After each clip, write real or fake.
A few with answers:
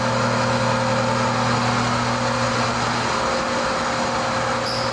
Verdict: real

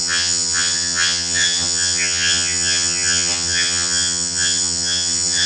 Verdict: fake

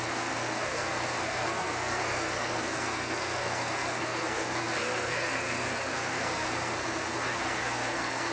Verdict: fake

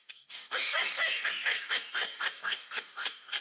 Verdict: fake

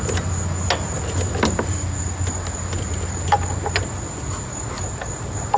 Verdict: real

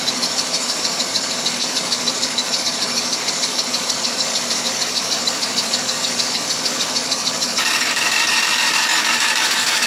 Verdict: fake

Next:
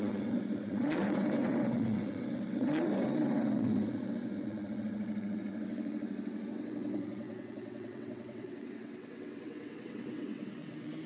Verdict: fake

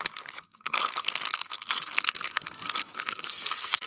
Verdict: fake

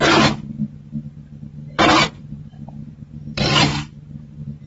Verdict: fake